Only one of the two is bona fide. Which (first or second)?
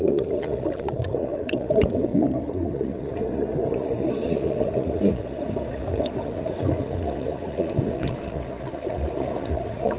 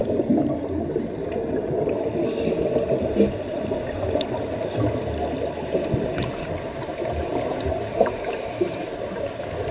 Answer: second